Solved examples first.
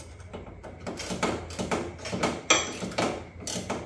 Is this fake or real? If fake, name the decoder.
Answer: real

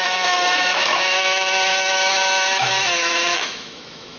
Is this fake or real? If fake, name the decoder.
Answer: fake, autoencoder, DAC-VAE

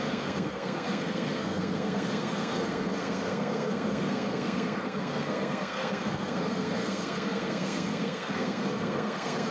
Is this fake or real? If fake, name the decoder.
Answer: fake, codec, SNAC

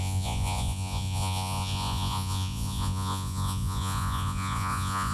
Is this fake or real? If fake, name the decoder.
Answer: fake, vocoder, Vocos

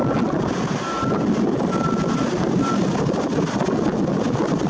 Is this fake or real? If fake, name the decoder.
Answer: real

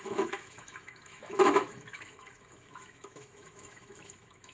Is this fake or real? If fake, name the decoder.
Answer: fake, autoencoder, DAC-VAE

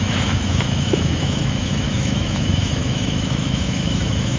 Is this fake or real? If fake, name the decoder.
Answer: fake, autoencoder, DAC-VAE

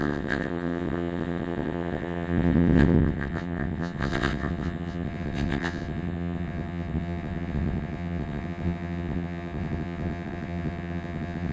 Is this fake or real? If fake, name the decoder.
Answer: fake, vocoder, WaveNeXt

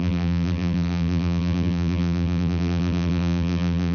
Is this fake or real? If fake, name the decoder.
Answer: fake, vocoder, BigVGAN v2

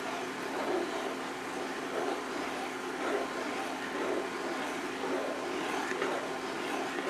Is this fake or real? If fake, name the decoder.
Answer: real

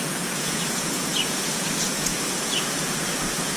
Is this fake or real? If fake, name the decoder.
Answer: fake, vocoder, Vocos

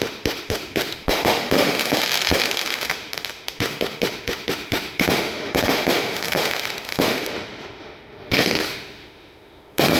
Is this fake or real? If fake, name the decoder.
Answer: fake, autoencoder, DAC-VAE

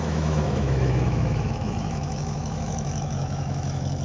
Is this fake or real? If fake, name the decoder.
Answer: fake, autoencoder, DAC-VAE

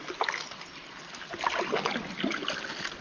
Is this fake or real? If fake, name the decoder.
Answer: real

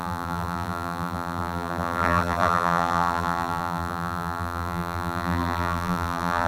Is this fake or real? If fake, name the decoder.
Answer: fake, vocoder, BigVGAN v2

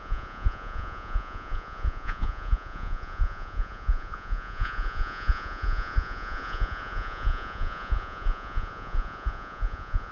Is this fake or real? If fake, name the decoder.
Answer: fake, vocoder, Vocos